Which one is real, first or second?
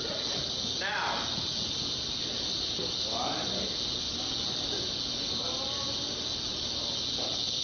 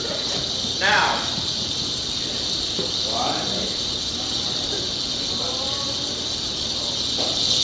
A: first